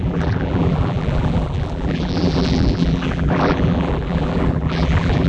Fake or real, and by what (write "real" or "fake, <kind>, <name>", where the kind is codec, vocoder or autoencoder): fake, vocoder, BigVGAN v2